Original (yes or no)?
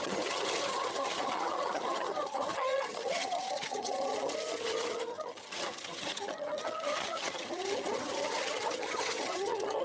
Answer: no